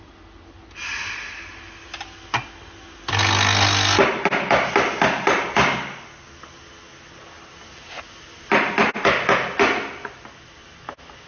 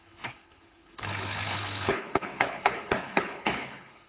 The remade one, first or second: second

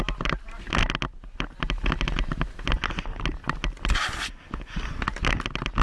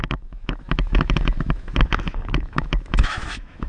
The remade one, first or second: second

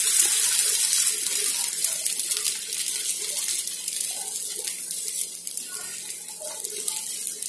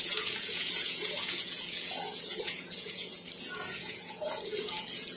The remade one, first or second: second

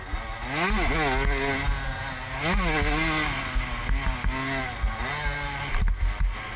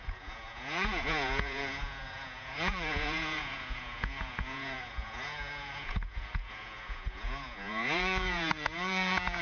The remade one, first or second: second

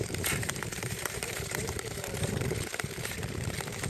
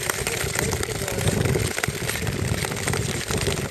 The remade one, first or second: first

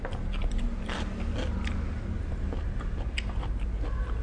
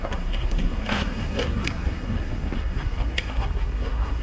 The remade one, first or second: second